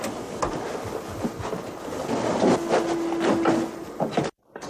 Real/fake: real